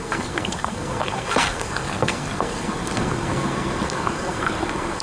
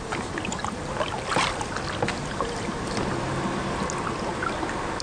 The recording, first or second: second